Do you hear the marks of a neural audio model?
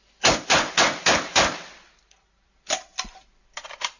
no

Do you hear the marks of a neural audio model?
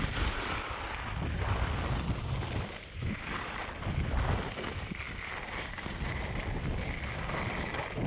no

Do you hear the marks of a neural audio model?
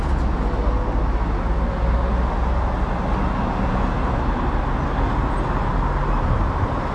no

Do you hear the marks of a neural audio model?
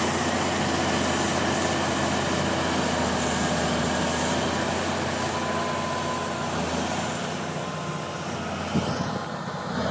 no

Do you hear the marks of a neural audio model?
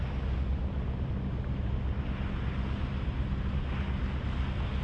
no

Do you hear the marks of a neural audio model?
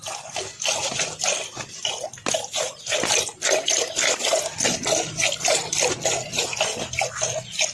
no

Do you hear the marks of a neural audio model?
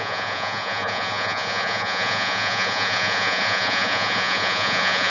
yes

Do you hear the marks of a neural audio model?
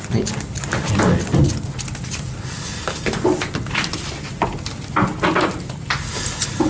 no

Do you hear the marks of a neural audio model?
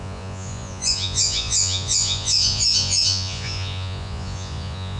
yes